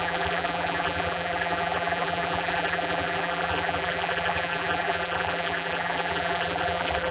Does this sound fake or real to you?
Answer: fake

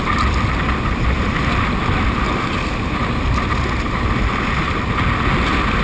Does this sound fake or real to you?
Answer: real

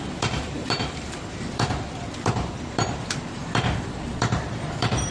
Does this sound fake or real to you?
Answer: fake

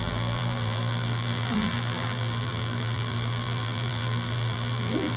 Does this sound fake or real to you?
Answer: fake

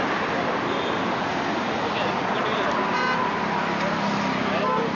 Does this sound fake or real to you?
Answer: real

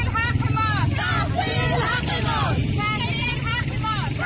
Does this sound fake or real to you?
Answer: real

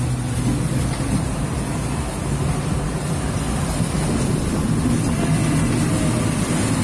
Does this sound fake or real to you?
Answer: real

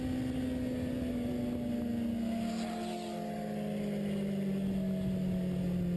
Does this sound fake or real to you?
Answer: real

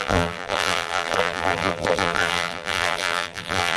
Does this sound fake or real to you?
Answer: fake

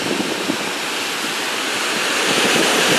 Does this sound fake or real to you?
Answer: real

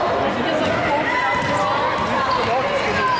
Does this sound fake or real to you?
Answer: real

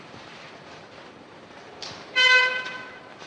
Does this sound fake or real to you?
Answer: fake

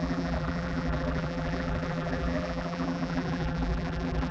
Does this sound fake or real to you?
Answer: fake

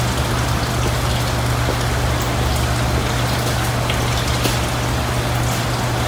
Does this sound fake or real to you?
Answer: real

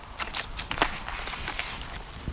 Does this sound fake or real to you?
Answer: real